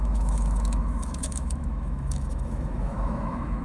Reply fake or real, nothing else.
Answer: fake